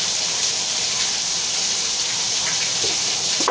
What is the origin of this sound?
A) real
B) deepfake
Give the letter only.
B